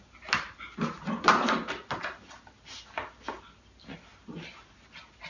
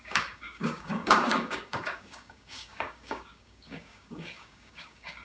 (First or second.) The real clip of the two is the first